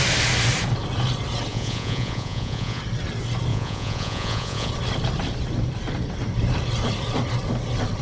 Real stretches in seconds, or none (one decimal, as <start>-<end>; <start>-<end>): 0.0-1.5; 2.8-3.5; 4.7-8.0